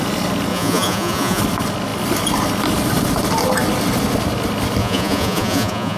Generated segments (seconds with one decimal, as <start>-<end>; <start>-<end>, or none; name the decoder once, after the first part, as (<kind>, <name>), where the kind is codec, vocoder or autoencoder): 0.5-1.4 (vocoder, Vocos); 4.8-6.0